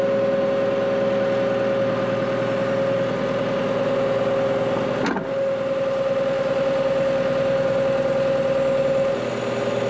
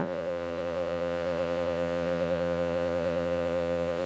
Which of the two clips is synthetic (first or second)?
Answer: second